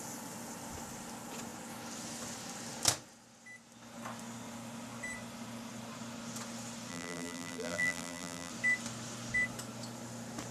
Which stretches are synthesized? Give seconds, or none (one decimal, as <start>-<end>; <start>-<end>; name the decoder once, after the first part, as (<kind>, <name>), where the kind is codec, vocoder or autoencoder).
6.9-8.5 (vocoder, BigVGAN v2)